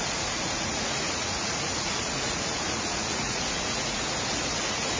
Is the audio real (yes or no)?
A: no